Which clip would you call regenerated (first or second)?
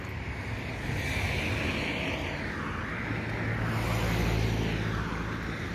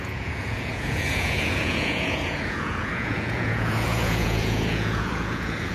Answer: second